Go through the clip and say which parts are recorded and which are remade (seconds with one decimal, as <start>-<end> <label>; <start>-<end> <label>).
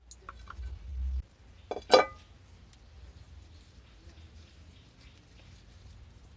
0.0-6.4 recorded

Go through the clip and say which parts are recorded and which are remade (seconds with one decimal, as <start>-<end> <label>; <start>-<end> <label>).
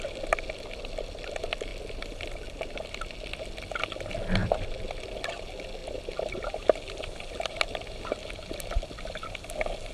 0.0-1.7 recorded; 1.7-2.7 remade; 2.7-4.4 recorded; 4.4-5.0 remade; 5.0-5.8 recorded; 5.8-8.0 remade; 8.0-9.9 recorded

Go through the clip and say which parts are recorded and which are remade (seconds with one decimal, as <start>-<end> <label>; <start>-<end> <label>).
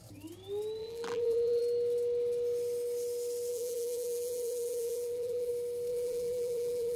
0.0-0.8 recorded; 0.8-1.6 remade; 1.6-3.5 recorded; 3.5-5.5 remade; 5.5-5.9 recorded; 5.9-7.0 remade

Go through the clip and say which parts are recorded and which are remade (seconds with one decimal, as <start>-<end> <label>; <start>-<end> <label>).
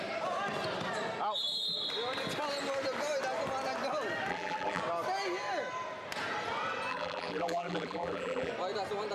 0.0-4.3 recorded; 4.3-4.8 remade; 4.8-6.9 recorded; 6.9-8.5 remade; 8.5-9.1 recorded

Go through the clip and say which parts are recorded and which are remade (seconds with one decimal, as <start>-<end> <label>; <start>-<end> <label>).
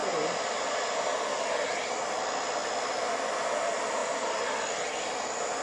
0.0-5.6 recorded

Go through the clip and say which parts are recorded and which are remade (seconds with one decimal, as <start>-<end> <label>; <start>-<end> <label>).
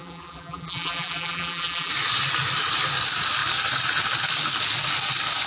0.0-1.9 remade; 1.9-5.5 recorded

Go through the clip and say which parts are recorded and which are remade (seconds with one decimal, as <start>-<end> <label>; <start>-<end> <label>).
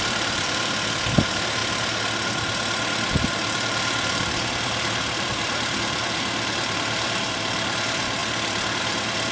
0.0-1.6 remade; 1.6-3.1 recorded; 3.1-9.3 remade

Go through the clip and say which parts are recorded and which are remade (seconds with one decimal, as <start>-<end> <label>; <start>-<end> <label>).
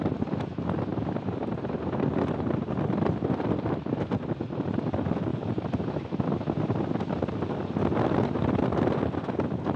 0.0-0.9 recorded; 0.9-1.8 remade; 1.8-9.8 recorded